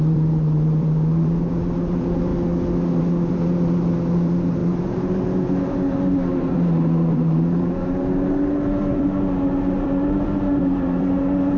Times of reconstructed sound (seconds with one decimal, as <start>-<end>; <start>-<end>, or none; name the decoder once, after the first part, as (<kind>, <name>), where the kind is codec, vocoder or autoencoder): 0.0-2.3 (vocoder, BigVGAN v2); 3.0-11.6